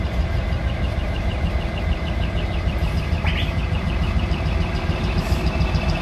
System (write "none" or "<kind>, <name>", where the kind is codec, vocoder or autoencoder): none